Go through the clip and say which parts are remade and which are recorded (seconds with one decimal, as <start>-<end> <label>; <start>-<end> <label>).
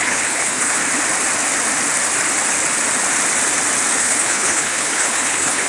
0.0-0.8 remade; 0.8-4.0 recorded; 4.0-5.7 remade